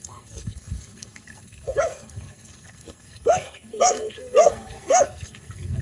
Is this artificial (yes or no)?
yes